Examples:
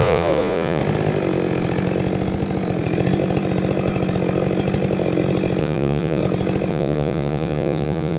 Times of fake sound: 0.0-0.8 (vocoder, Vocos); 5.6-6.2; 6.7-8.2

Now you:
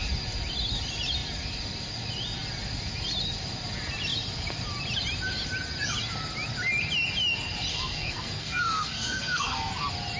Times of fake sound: 7.7-9.7 (codec, SNAC)

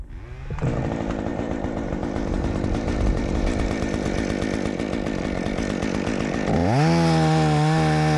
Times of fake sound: 1.3-4.1 (vocoder, BigVGAN v2)

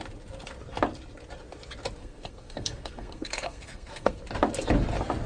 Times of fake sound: 2.0-4.2 (codec, SNAC)

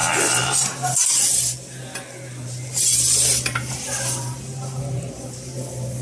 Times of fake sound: none

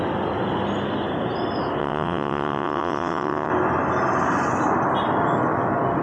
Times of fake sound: 1.8-3.5 (vocoder, WaveNeXt)

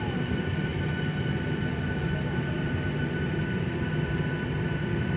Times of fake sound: 0.0-0.7 (vocoder, BigVGAN v2); 2.5-5.2